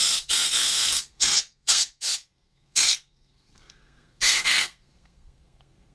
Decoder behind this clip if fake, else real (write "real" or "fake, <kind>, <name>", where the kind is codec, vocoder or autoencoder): fake, codec, SNAC